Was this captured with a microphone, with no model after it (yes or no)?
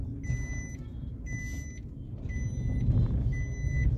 yes